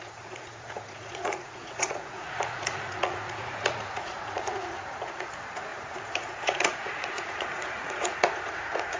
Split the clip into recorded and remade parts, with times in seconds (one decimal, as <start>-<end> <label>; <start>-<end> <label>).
0.0-9.0 remade